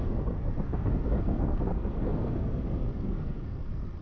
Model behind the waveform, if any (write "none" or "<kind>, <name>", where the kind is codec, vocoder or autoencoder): codec, SNAC